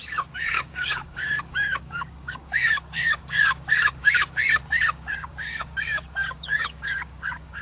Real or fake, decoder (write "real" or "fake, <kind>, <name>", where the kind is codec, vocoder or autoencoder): fake, codec, DAC